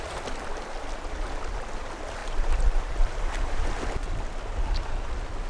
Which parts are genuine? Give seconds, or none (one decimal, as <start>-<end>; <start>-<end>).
0.0-2.2; 3.7-5.5